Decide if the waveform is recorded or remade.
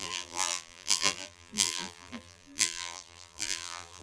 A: remade